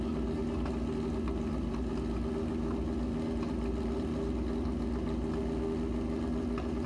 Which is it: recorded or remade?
recorded